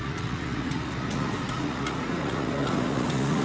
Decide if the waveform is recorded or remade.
remade